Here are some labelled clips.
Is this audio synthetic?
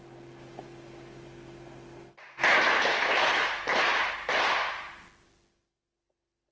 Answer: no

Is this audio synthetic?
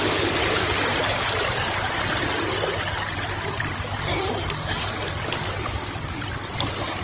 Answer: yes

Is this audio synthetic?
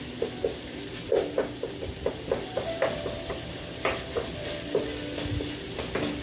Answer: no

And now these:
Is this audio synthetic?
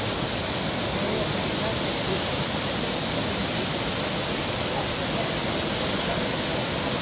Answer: no